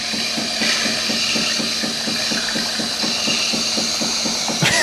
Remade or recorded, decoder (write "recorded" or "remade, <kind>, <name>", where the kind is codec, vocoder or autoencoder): recorded